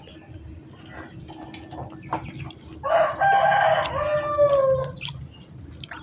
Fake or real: real